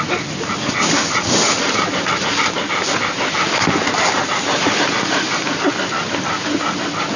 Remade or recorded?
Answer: recorded